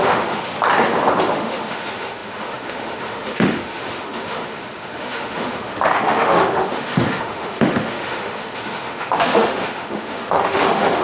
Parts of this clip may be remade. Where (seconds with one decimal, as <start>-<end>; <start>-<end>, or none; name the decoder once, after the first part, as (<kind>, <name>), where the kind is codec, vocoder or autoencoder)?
0.0-0.5 (autoencoder, DAC-VAE); 1.2-11.0